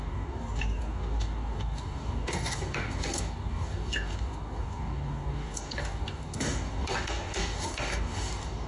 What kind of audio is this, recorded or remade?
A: remade